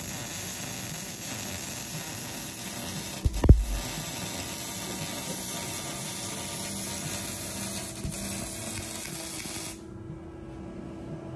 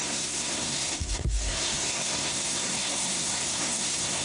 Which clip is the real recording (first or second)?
first